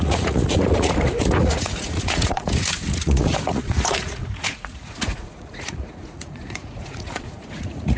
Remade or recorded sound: remade